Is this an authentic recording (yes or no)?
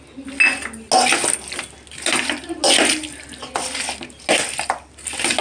yes